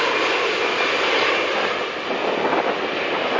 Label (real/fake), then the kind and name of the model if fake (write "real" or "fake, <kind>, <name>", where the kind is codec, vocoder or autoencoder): real